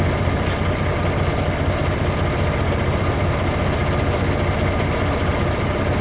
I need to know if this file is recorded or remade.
recorded